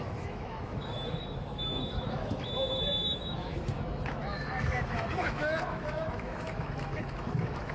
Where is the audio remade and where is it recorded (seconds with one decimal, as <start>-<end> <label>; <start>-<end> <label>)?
0.0-7.7 remade